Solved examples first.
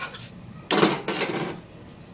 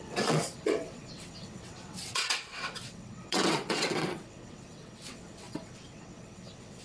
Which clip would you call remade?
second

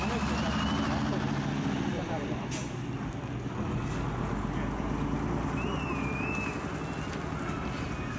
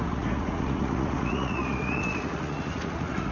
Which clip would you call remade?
second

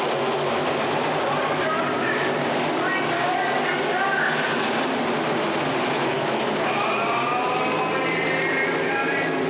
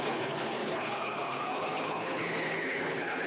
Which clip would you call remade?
second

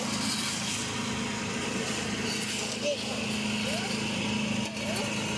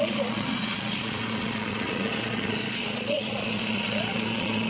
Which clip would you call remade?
second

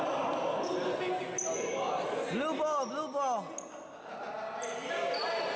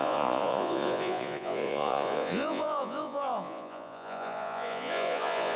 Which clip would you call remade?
second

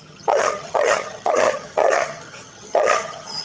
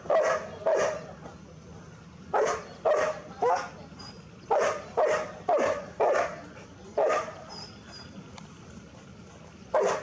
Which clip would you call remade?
first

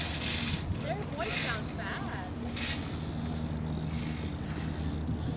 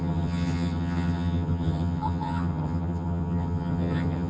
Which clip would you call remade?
second